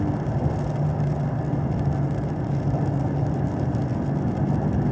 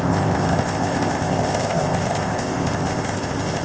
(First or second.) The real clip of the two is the first